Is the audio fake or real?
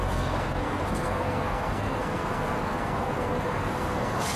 fake